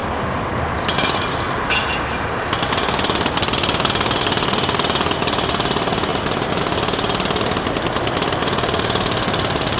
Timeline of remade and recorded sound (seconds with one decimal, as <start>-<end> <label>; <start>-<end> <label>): 0.0-9.8 recorded